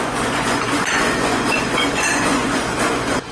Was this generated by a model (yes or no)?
yes